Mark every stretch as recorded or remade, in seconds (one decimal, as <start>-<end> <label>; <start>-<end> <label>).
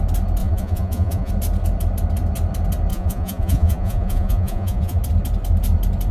0.0-0.4 recorded; 0.4-1.3 remade; 1.3-2.9 recorded; 2.9-5.0 remade; 5.0-6.1 recorded